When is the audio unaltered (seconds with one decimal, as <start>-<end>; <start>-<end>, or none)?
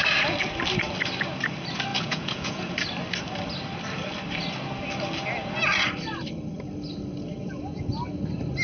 0.0-1.9; 2.7-8.6